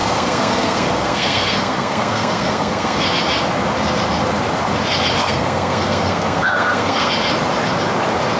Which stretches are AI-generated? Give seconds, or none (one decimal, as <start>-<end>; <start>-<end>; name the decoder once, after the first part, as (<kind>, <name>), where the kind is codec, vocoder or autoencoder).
0.0-3.0 (codec, SNAC); 5.2-7.1